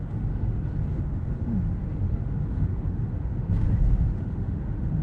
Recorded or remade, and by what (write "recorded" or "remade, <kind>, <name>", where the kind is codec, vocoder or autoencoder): remade, autoencoder, DAC-VAE